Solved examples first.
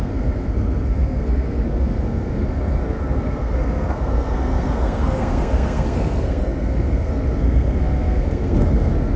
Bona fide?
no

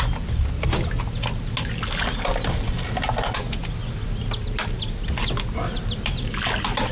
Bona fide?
yes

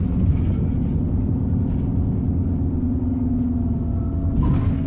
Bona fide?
yes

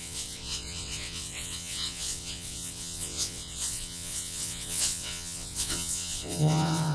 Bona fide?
no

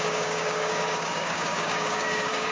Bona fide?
no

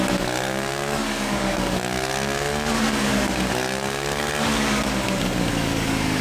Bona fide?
no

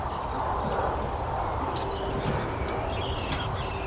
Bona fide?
yes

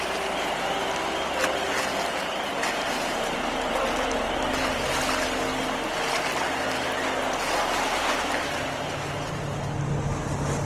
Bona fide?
yes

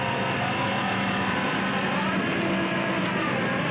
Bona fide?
yes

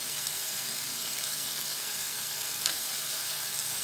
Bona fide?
no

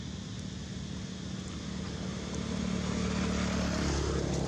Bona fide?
yes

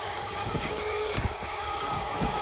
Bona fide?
no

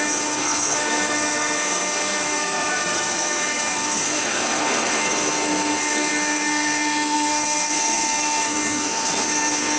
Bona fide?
no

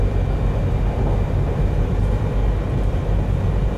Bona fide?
yes